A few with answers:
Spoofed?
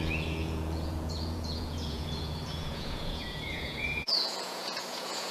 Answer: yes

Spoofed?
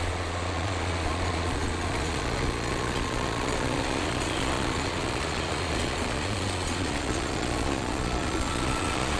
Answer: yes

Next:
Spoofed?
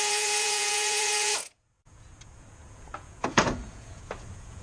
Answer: yes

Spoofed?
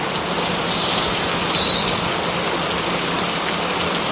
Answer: no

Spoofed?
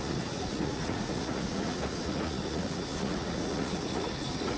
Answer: yes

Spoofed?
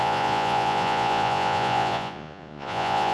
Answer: yes